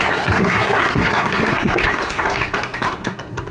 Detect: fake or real fake